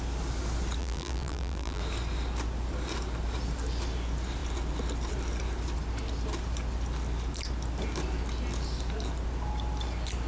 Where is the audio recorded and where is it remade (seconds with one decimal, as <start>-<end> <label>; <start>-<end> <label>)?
0.0-0.8 recorded; 0.8-1.8 remade; 1.8-10.3 recorded